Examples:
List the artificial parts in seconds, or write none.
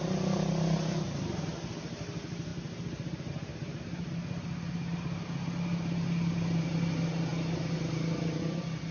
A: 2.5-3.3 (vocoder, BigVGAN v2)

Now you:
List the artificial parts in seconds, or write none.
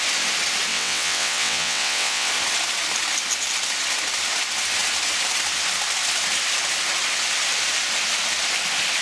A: 0.7-2.3 (vocoder, WaveNeXt)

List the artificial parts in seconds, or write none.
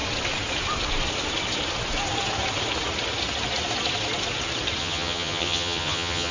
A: 4.8-6.3 (vocoder, HiFi-GAN)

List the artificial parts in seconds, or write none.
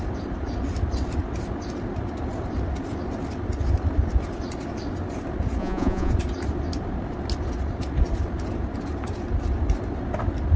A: 5.6-6.1 (vocoder, Vocos)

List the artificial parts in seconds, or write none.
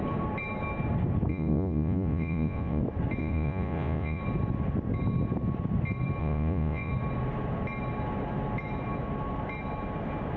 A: 1.3-2.8 (vocoder, Vocos); 3.2-4.2; 6.2-6.9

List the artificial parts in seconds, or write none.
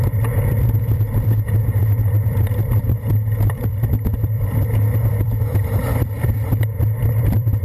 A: 0.0-7.6 (vocoder, BigVGAN v2)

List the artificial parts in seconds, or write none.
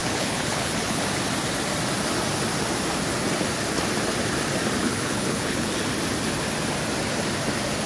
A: 0.0-1.0 (codec, HILCodec); 4.8-5.7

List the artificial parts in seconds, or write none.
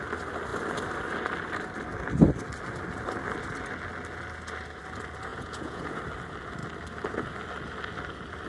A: 5.3-6.0 (vocoder, Vocos)